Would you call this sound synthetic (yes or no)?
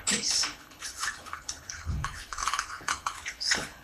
yes